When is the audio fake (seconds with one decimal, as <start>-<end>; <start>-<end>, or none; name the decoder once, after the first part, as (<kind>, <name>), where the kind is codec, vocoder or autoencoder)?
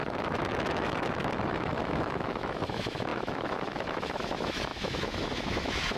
0.0-6.0 (autoencoder, DAC-VAE)